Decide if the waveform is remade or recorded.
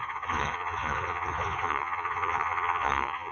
remade